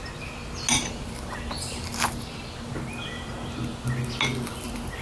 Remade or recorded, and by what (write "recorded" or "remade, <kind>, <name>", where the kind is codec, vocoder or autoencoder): recorded